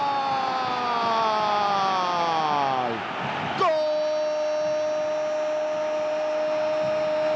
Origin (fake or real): real